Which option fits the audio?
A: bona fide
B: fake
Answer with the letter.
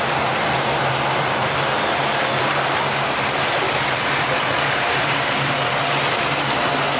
A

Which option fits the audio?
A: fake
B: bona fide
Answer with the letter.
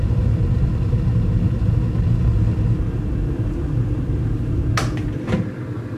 B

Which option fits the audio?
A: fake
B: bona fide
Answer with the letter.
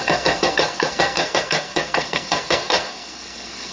A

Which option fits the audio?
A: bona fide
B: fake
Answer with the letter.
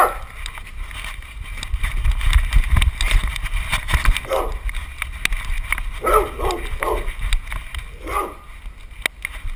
A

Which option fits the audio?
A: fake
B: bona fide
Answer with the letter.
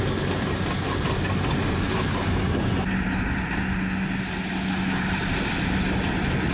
B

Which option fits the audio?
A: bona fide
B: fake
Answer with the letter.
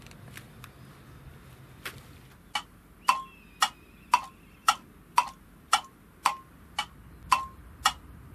A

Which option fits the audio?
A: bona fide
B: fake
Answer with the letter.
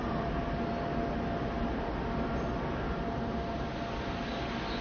A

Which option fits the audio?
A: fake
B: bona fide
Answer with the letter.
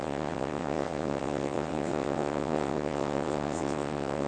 A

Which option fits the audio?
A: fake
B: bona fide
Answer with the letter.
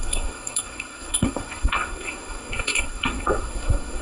A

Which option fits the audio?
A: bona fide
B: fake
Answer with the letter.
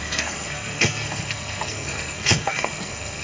B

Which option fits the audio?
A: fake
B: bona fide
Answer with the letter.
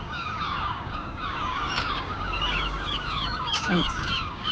A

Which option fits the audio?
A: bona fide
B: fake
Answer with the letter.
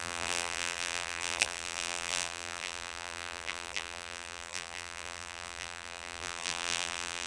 B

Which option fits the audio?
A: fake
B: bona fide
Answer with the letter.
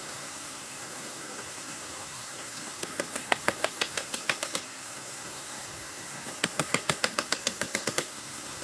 A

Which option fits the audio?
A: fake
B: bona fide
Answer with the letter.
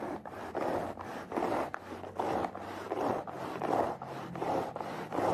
A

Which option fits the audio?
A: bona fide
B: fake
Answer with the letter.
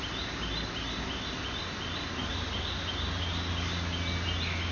A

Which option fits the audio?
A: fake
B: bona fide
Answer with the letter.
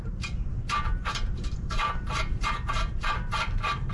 A